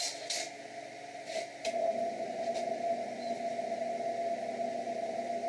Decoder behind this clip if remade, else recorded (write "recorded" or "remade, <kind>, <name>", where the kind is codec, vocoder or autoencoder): recorded